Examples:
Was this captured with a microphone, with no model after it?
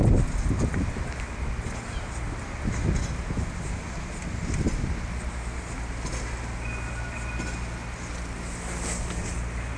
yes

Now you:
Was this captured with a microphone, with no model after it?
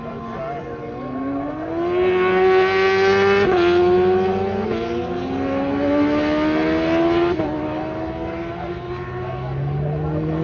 yes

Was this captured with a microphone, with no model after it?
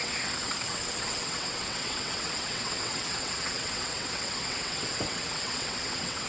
no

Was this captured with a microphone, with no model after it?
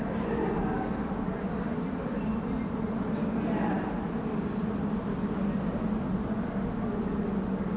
yes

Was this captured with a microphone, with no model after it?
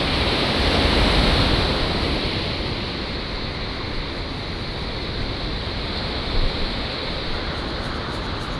yes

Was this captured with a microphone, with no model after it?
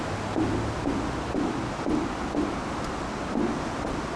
yes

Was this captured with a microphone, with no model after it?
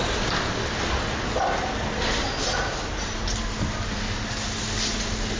yes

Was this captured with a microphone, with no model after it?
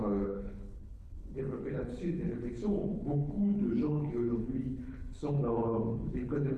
no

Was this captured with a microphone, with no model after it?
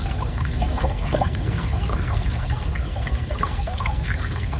no